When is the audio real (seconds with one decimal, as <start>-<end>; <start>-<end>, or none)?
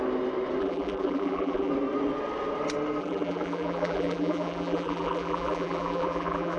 0.0-0.6; 1.7-3.0